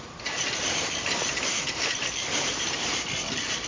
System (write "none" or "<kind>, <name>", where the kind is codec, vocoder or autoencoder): vocoder, BigVGAN v2